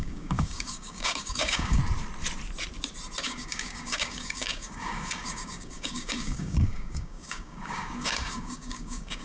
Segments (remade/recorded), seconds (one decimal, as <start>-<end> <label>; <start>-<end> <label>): 0.0-1.8 remade; 1.8-3.2 recorded; 3.2-9.2 remade